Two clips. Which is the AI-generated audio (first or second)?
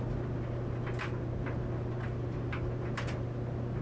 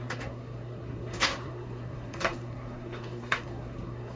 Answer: second